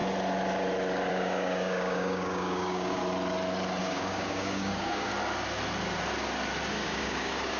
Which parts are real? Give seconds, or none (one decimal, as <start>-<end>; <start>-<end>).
0.0-1.1; 3.0-3.8; 5.1-6.7